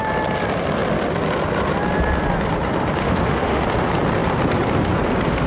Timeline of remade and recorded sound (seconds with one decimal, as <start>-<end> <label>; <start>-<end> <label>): 0.0-3.0 recorded; 3.0-3.6 remade; 3.6-5.5 recorded

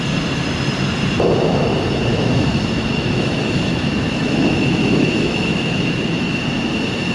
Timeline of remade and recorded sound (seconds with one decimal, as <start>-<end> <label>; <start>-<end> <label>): 0.0-2.1 recorded; 2.1-6.4 remade; 6.4-7.1 recorded

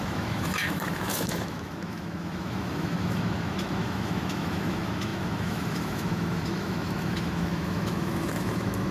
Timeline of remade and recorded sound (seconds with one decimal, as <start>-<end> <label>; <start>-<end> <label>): 0.0-8.9 remade